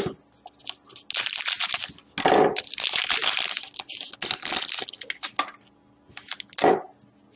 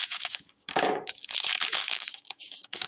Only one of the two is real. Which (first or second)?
first